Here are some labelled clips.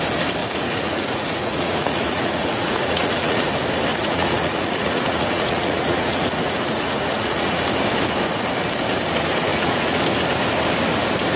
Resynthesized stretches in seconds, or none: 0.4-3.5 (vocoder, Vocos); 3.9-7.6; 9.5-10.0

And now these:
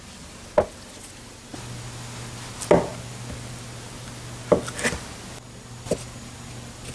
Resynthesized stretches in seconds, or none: none

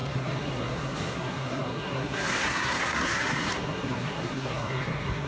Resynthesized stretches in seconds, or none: 0.0-5.3 (codec, SNAC)

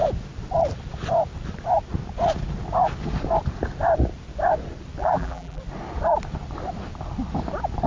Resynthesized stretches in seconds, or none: 5.0-5.6 (vocoder, BigVGAN v2)

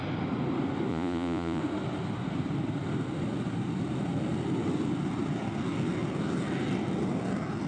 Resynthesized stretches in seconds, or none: 0.9-1.6 (vocoder, Vocos)

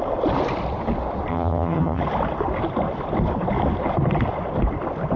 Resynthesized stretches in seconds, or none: 1.3-2.0 (vocoder, HiFi-GAN)

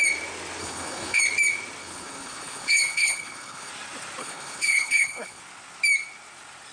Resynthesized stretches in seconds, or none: 0.6-1.2 (codec, HILCodec); 1.8-3.7; 4.2-5.4

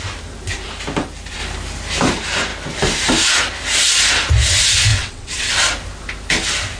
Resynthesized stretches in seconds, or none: 4.9-5.5 (vocoder, WaveNeXt)